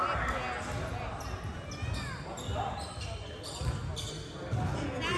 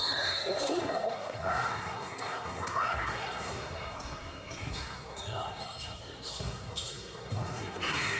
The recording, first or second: first